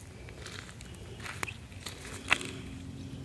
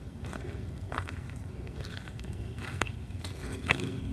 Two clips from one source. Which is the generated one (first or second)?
second